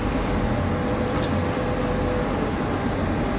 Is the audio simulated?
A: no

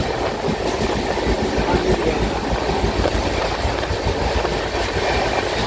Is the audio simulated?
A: no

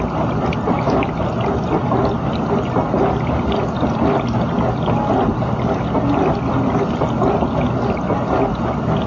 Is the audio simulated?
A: no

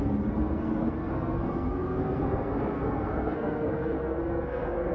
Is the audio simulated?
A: yes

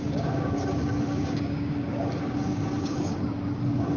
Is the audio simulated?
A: yes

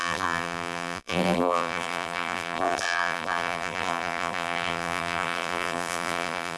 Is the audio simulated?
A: yes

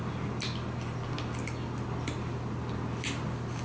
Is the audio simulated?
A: no